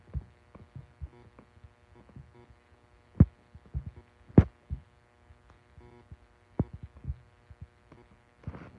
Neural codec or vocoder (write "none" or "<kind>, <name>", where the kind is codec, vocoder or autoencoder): none